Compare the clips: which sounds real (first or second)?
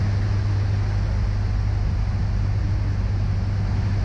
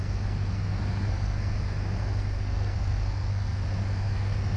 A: first